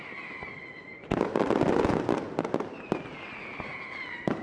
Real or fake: real